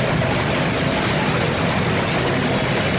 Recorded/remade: recorded